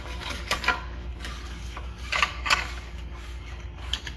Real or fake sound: fake